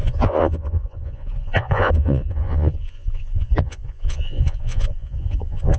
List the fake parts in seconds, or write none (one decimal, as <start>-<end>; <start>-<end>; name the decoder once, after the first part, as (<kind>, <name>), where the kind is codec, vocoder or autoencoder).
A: 0.0-5.8 (vocoder, Vocos)